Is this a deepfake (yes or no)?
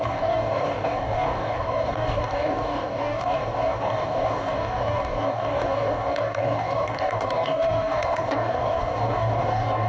yes